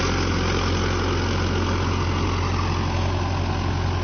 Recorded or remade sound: recorded